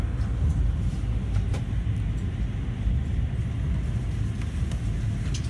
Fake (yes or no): no